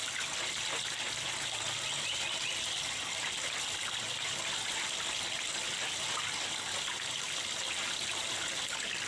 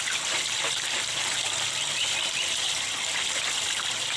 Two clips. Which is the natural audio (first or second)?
first